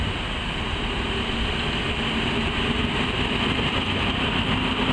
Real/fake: real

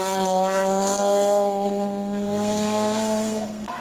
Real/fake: fake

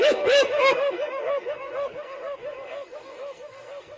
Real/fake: fake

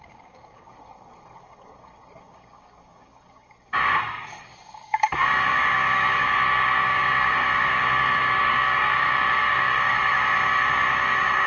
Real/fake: fake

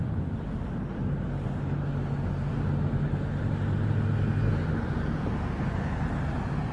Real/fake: real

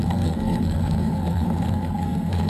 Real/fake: fake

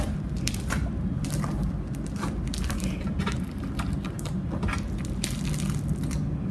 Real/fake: real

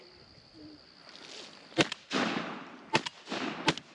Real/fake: real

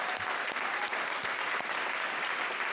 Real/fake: real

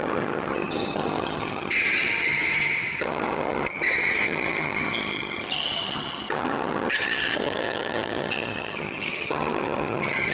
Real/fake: fake